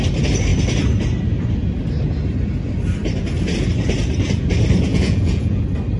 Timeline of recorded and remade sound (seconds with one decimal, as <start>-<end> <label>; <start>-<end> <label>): 0.0-4.9 recorded; 4.9-5.6 remade; 5.6-6.0 recorded